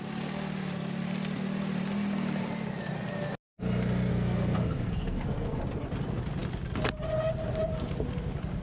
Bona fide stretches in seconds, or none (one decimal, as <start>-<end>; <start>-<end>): 0.0-4.1; 5.6-8.6